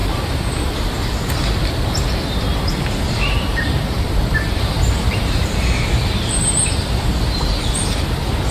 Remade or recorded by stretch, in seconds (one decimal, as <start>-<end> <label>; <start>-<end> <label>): 0.0-0.7 remade; 0.7-2.5 recorded; 2.5-7.1 remade; 7.1-8.5 recorded

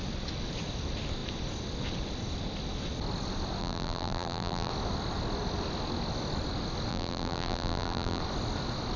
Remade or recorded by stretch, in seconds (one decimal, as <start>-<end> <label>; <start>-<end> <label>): 0.0-3.6 recorded; 3.6-4.7 remade; 4.7-6.9 recorded; 6.9-8.2 remade; 8.2-9.0 recorded